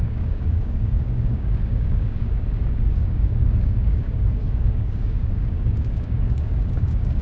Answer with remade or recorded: remade